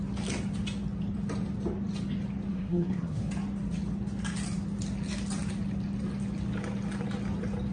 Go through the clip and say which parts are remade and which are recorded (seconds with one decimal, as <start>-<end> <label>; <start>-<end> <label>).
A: 0.0-2.5 recorded; 2.5-3.3 remade; 3.3-7.7 recorded